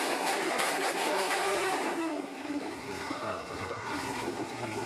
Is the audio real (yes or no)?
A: no